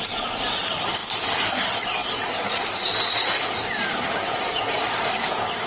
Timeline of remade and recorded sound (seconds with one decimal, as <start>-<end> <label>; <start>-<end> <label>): 0.0-1.0 recorded; 1.0-1.5 remade; 1.5-5.7 recorded